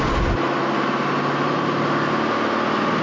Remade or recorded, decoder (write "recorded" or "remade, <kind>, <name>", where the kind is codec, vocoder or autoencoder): recorded